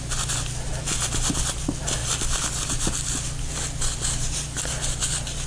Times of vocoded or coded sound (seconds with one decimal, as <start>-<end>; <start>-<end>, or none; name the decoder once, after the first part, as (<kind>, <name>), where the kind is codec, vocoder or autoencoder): none